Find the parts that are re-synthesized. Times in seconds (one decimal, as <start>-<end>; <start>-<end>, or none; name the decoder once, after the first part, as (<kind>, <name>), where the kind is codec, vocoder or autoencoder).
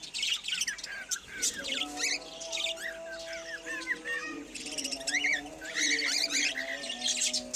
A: none